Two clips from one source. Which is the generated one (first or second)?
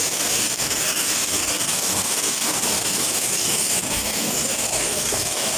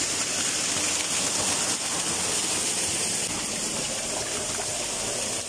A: first